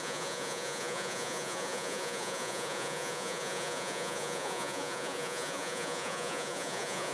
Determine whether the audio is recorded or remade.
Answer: remade